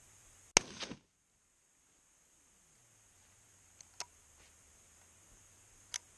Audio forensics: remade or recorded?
recorded